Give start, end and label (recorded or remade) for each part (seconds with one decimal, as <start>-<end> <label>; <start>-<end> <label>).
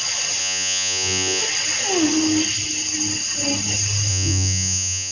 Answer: 0.0-0.4 recorded; 0.4-1.4 remade; 1.4-4.1 recorded; 4.1-5.1 remade